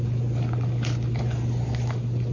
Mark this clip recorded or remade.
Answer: recorded